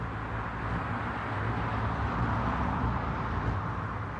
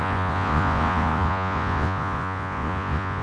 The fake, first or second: second